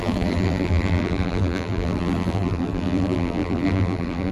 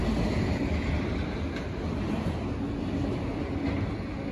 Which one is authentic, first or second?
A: second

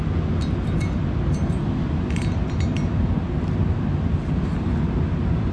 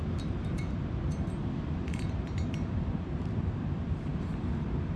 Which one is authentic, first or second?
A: first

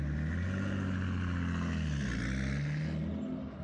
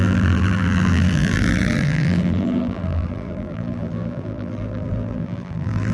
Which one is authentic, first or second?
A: first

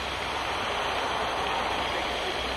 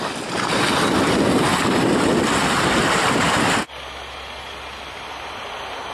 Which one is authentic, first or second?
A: second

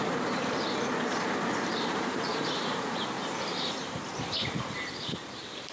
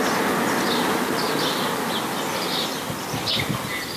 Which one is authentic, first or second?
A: second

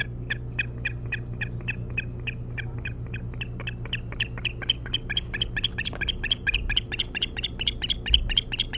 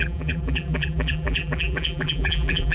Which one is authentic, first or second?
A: first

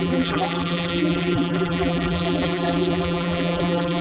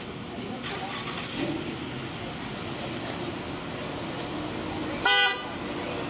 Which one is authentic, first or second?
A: second